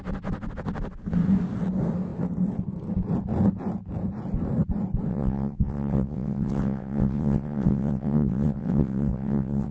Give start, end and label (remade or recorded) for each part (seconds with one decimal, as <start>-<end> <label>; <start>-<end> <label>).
0.0-5.1 recorded; 5.1-9.7 remade